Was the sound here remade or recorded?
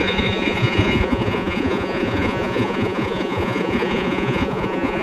remade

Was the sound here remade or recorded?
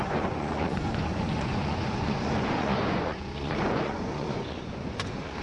remade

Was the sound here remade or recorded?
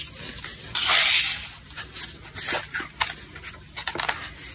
recorded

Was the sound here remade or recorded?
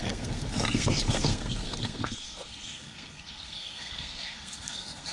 remade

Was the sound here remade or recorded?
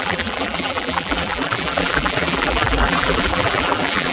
remade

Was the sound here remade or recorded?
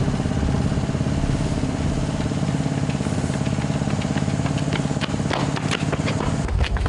recorded